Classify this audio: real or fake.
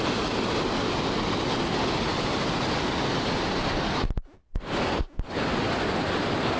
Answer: real